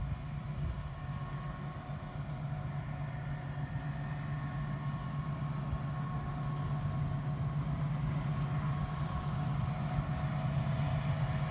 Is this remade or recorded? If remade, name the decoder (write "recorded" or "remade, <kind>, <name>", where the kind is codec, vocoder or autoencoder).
recorded